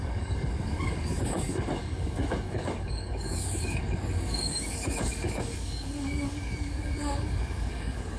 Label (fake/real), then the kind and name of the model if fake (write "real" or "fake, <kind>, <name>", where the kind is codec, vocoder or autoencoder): fake, codec, DAC